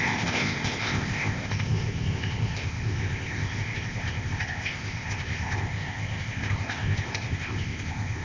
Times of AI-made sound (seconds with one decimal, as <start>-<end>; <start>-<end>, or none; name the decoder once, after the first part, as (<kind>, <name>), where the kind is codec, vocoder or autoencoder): 0.0-8.2 (codec, ZipCodec)